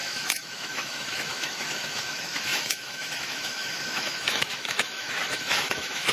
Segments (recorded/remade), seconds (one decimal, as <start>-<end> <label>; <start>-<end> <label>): 0.0-6.1 remade